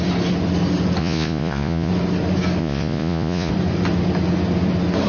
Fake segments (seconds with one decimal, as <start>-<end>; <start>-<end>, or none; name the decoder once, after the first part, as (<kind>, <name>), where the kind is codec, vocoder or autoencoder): 1.0-1.9 (vocoder, Vocos); 2.6-3.5